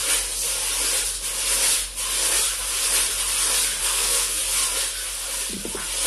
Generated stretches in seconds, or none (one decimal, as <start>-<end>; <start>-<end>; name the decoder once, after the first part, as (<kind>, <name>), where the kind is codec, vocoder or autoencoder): 3.8-4.4 (codec, SNAC)